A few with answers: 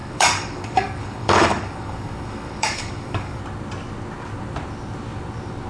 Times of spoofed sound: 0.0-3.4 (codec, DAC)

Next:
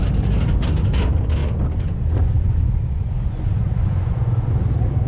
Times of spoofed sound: 1.4-4.5 (vocoder, Vocos)

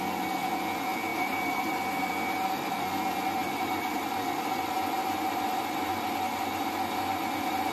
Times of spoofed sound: 1.1-2.1 (vocoder, BigVGAN v2); 3.4-7.7

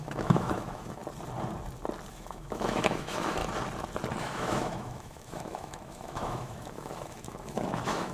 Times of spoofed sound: 0.0-1.0 (autoencoder, DAC-VAE); 2.1-3.4; 4.2-8.1

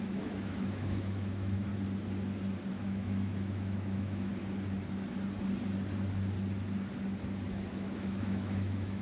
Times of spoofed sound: 0.0-1.7 (autoencoder, DAC-VAE); 2.7-4.3; 7.7-9.0